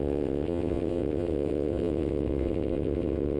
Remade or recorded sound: remade